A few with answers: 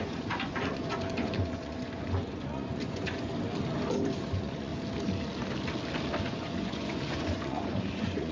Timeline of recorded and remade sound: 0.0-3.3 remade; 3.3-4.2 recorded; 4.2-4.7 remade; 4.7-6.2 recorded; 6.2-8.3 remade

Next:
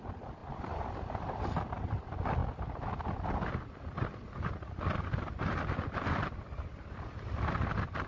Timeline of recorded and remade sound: 0.0-8.1 recorded

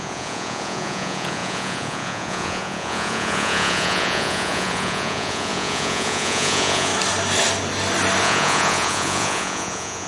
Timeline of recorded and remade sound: 0.0-6.9 remade; 6.9-8.2 recorded; 8.2-10.1 remade

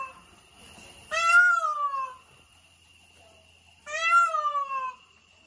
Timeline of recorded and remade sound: 0.0-0.5 remade; 0.5-3.8 recorded; 3.8-5.5 remade

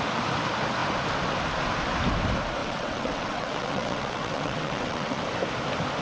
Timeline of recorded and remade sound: 0.0-2.6 recorded; 2.6-5.2 remade; 5.2-6.0 recorded

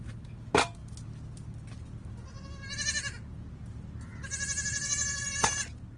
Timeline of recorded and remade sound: 0.0-6.0 recorded

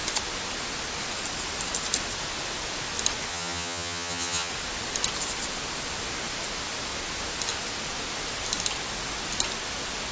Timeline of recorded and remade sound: 0.0-3.3 recorded; 3.3-4.5 remade; 4.5-10.1 recorded